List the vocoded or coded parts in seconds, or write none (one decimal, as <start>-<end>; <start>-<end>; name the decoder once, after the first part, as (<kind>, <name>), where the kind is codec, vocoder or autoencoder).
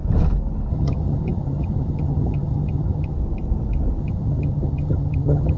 0.7-3.1 (vocoder, HiFi-GAN); 4.0-5.6